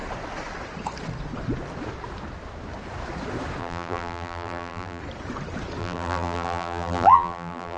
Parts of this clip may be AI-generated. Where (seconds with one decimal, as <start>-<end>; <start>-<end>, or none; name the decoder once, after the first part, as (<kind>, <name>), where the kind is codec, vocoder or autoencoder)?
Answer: 3.6-5.0 (vocoder, BigVGAN v2); 5.8-7.8